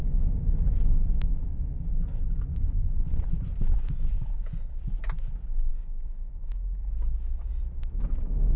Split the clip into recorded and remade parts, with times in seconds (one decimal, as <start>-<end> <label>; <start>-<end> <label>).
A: 0.0-5.7 recorded; 5.7-6.9 remade; 6.9-8.6 recorded